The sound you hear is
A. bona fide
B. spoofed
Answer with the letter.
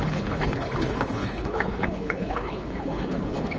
B